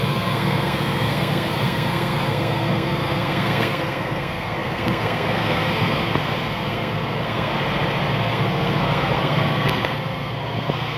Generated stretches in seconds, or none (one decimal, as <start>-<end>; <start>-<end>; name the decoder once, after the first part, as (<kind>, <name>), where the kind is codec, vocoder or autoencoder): 0.0-7.5 (codec, SNAC); 8.1-11.0